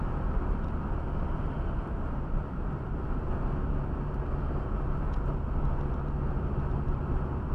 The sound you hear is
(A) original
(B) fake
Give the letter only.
A